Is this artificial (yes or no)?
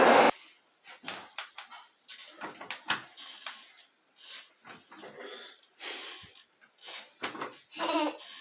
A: no